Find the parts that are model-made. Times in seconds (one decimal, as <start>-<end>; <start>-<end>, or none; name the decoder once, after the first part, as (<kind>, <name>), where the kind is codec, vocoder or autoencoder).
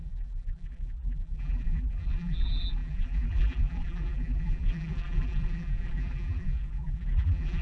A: 0.0-7.6 (vocoder, BigVGAN v2)